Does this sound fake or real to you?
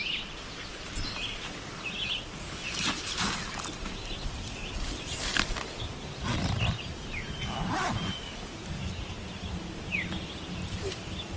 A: real